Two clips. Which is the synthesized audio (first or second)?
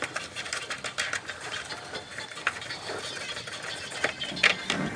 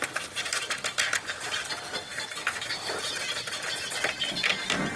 first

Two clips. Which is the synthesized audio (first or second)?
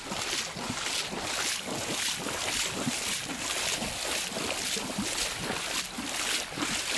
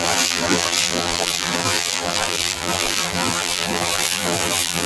second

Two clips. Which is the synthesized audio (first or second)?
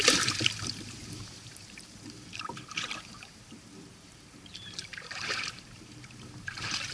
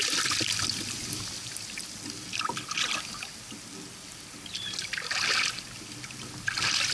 first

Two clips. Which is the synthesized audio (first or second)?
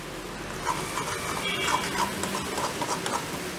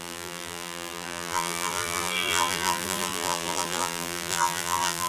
second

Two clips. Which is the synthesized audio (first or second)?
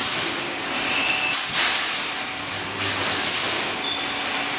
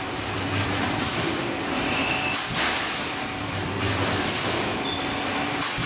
second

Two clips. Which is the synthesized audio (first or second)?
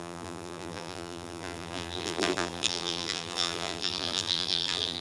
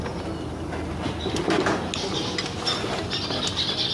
first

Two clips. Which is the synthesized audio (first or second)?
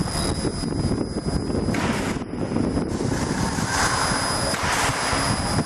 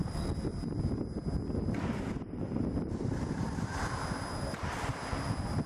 second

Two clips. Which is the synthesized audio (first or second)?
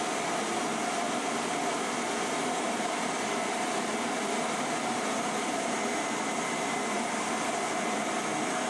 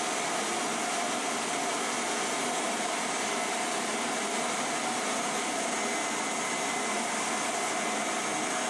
first